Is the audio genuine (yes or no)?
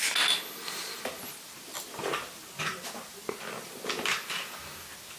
yes